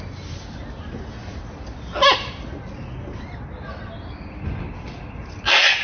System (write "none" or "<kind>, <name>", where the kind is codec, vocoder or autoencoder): none